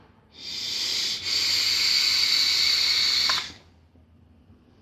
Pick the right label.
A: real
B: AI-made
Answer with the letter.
A